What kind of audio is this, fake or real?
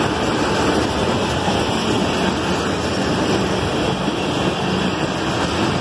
real